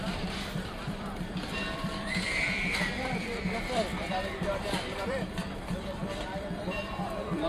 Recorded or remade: remade